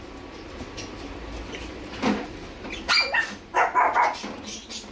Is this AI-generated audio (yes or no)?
no